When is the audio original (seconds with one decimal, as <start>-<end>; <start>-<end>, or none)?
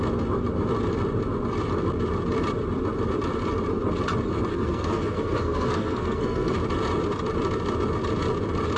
0.0-4.5; 6.5-8.8